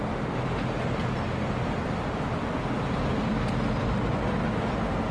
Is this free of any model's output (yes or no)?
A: yes